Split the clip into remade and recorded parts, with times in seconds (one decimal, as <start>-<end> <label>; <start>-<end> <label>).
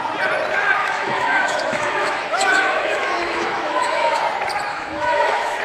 0.0-0.8 recorded; 0.8-4.2 remade; 4.2-4.7 recorded; 4.7-5.6 remade